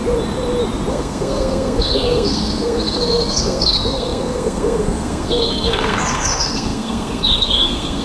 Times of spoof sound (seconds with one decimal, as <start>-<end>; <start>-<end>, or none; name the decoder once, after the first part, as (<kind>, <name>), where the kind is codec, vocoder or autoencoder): 0.9-8.0 (codec, SNAC)